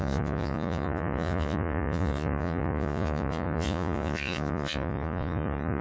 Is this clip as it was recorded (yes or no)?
no